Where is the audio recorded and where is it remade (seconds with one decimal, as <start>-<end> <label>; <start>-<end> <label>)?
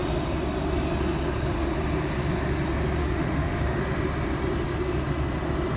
0.0-3.0 recorded; 3.0-3.8 remade; 3.8-5.8 recorded